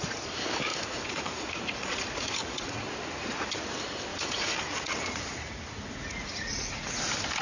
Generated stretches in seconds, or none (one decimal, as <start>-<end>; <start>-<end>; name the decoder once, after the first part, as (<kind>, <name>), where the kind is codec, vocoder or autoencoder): 0.7-3.5 (vocoder, Vocos); 4.1-7.0